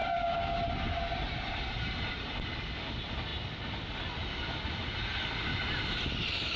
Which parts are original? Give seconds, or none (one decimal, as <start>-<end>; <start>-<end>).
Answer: 0.6-6.6